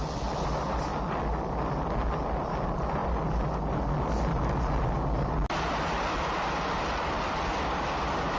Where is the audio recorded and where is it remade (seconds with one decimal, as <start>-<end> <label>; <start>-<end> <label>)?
0.0-8.4 recorded